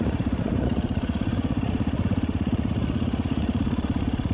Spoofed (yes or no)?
yes